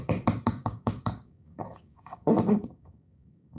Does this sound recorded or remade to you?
remade